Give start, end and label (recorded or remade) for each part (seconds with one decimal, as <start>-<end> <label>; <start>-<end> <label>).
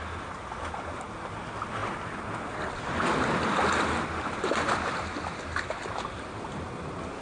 0.0-7.2 recorded